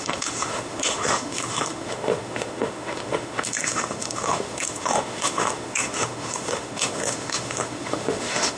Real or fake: fake